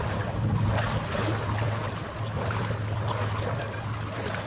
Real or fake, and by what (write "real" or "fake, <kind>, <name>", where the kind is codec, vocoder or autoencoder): real